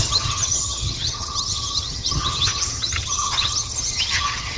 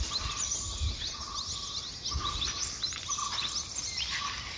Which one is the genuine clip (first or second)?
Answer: second